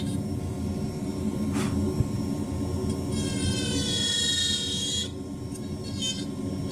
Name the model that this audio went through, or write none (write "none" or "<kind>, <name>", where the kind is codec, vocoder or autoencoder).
none